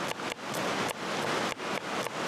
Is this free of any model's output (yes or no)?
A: yes